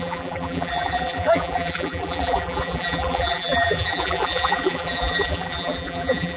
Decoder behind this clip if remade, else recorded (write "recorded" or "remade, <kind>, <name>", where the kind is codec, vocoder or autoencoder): remade, vocoder, BigVGAN v2